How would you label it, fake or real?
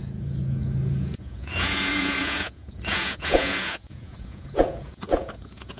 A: fake